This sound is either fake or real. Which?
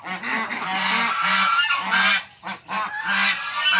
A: real